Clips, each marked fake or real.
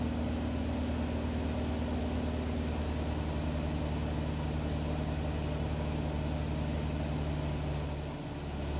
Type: real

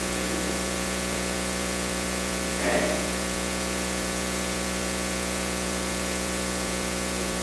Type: fake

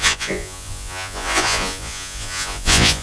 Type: fake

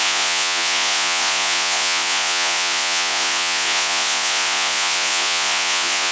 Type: fake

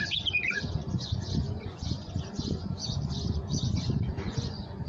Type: fake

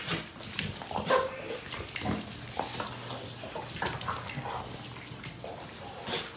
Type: real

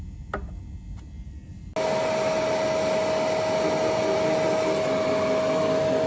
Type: real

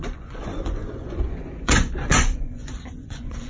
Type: fake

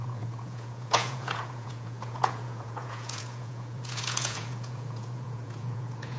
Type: fake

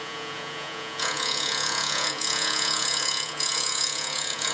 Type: fake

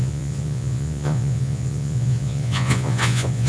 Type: fake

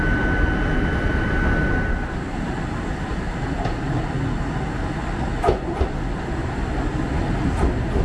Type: real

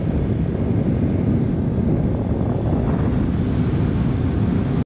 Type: real